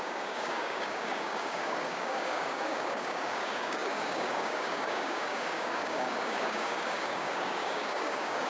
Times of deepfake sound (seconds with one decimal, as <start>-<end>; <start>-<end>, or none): 0.0-8.5